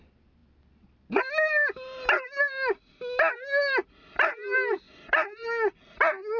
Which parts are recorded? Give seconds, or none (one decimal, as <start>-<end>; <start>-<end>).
0.0-6.4